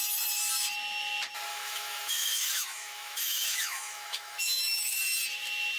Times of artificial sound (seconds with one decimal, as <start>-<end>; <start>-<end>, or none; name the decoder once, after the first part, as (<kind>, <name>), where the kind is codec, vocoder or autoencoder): 1.5-5.0 (autoencoder, DAC-VAE)